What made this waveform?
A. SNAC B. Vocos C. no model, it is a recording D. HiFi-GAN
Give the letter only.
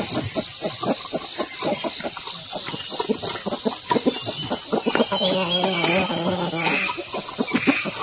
C